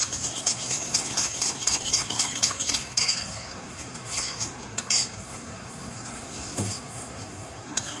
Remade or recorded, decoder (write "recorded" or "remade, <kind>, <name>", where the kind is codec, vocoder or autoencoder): remade, codec, SNAC